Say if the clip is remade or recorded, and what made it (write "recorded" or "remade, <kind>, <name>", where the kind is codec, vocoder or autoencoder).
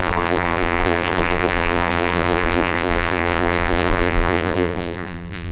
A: remade, vocoder, BigVGAN v2